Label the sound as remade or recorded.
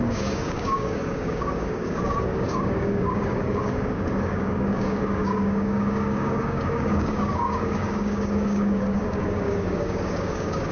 remade